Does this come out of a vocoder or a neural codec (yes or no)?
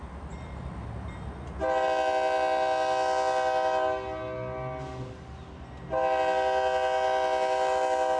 no